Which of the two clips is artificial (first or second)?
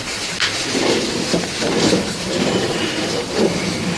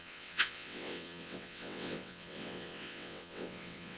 second